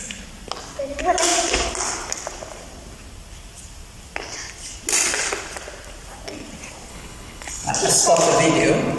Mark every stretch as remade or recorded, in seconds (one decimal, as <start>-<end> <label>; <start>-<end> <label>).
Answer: 0.0-6.9 recorded; 6.9-7.7 remade; 7.7-9.0 recorded